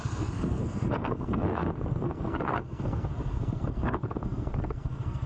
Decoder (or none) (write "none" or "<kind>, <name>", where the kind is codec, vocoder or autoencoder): codec, SNAC